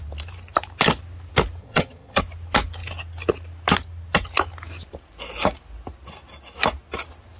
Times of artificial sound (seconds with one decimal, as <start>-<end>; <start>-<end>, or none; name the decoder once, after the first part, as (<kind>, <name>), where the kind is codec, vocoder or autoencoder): 1.6-2.2 (vocoder, HiFi-GAN)